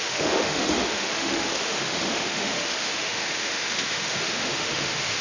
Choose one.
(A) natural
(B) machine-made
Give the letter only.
B